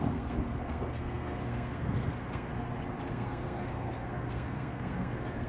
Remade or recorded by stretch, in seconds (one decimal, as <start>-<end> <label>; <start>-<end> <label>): 0.0-2.5 remade; 2.5-3.1 recorded; 3.1-5.5 remade